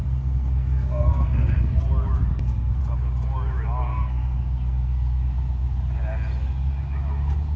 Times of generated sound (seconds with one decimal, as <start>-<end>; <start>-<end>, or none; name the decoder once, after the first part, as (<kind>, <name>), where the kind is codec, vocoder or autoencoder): 0.0-1.8 (codec, SNAC); 2.3-2.8; 3.9-5.2